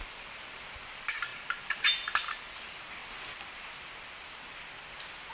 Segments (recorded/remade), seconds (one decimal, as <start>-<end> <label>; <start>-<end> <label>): 0.0-1.3 recorded; 1.3-1.8 remade; 1.8-5.3 recorded